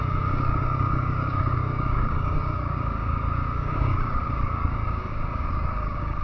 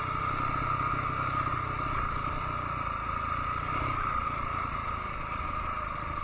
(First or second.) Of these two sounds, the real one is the second